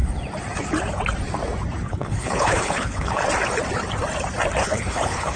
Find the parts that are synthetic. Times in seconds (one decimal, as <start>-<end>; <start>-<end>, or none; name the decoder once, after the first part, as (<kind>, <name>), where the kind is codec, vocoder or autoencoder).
1.9-3.2 (codec, HILCodec); 4.6-5.4